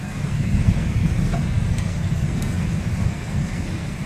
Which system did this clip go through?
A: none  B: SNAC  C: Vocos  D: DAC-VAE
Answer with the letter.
B